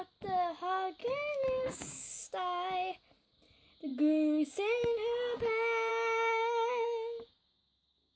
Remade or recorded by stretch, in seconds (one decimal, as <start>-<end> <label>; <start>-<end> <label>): 0.0-1.0 recorded; 1.0-2.2 remade; 2.2-3.9 recorded; 3.9-5.4 remade; 5.4-5.9 recorded; 5.9-8.2 remade